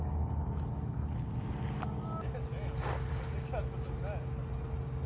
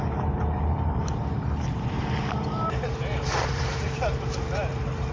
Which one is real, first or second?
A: first